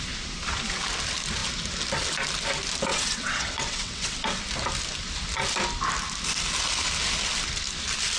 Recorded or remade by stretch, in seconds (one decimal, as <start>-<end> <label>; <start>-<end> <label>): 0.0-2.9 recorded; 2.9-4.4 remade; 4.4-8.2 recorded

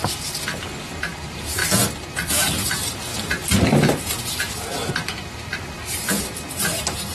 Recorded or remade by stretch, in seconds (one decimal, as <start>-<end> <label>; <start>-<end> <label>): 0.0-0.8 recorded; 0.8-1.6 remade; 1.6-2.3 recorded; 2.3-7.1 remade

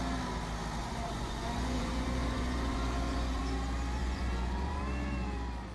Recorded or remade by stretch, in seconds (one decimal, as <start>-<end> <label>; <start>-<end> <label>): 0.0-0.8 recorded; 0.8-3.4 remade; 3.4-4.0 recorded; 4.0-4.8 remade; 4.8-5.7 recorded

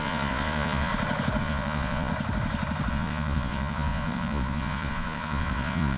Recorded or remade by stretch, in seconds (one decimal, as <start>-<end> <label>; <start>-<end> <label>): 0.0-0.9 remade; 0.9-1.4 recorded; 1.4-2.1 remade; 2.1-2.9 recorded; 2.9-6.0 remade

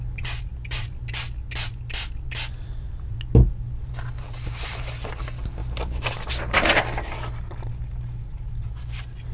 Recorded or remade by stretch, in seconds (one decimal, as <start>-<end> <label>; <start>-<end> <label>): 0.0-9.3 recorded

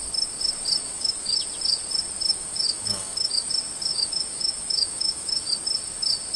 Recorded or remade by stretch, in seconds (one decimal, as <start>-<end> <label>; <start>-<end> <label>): 0.0-0.8 recorded; 0.8-1.4 remade; 1.4-2.3 recorded; 2.3-3.5 remade; 3.5-3.9 recorded; 3.9-5.5 remade; 5.5-6.4 recorded